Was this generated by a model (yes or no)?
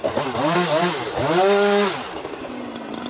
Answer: no